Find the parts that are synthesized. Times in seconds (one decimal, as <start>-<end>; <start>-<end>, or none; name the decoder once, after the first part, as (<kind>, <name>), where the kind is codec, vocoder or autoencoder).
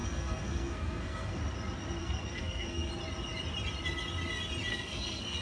0.0-1.4 (codec, SNAC); 2.0-2.9; 4.7-5.4